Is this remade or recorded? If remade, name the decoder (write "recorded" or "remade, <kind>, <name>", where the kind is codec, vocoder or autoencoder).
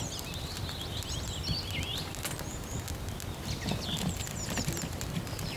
recorded